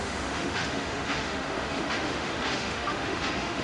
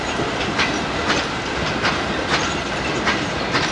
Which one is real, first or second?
second